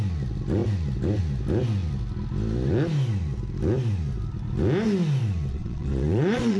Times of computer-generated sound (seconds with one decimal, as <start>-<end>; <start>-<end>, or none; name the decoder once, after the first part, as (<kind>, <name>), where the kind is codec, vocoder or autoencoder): 5.5-6.6 (vocoder, Vocos)